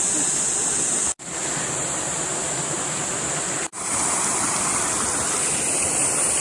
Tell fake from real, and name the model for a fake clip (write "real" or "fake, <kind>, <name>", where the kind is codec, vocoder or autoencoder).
real